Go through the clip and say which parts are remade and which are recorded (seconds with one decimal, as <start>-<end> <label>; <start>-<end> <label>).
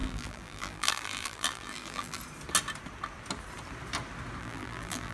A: 0.0-2.2 remade; 2.2-4.4 recorded; 4.4-5.1 remade